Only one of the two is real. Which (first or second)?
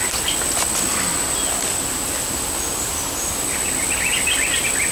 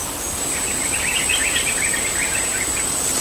first